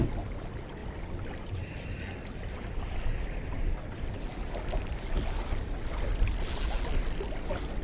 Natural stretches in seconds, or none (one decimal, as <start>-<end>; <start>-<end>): 0.0-7.8